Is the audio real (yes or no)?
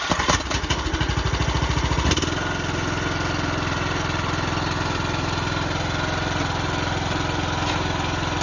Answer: yes